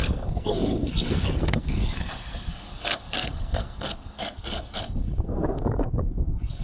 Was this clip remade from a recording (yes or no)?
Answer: yes